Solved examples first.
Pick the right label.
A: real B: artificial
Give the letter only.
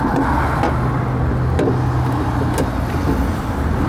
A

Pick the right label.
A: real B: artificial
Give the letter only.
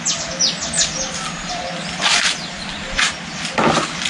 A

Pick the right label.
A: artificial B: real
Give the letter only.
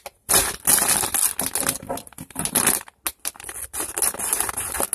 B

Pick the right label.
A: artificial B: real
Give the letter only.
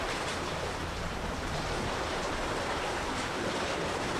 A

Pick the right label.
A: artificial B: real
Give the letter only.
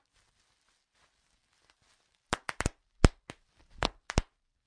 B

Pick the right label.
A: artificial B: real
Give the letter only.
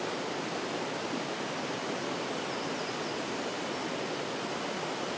B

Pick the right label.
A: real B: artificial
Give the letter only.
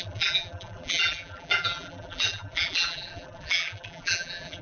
B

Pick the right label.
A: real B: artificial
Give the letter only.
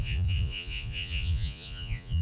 B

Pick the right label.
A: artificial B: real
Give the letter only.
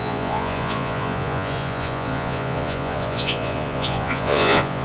A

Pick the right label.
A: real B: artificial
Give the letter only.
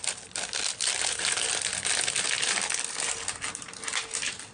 A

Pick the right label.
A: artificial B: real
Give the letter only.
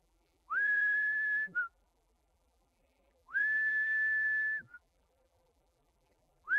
A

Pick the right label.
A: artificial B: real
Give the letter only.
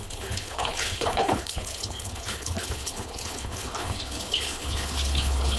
A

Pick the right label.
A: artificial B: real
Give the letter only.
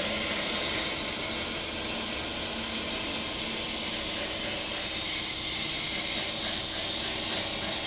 B